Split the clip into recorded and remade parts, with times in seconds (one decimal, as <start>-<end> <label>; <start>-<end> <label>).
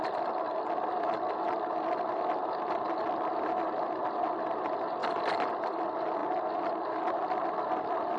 0.0-8.2 recorded